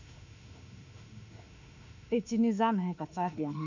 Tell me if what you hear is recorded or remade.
remade